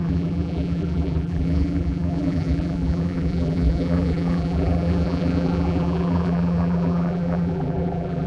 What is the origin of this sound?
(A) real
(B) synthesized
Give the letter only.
B